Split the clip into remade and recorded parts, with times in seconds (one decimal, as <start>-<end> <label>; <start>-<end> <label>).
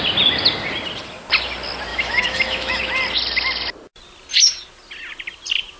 0.0-1.9 recorded; 1.9-2.8 remade; 2.8-5.8 recorded